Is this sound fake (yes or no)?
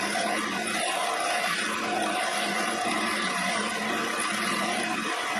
yes